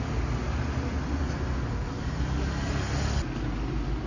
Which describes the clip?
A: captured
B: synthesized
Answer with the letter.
A